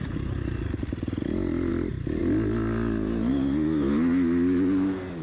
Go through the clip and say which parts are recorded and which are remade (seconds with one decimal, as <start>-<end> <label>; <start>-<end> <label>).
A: 0.0-1.7 recorded; 1.7-2.2 remade; 2.2-5.2 recorded